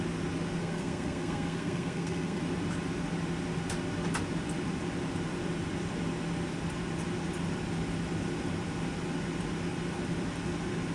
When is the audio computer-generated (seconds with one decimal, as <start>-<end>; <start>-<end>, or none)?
0.6-2.4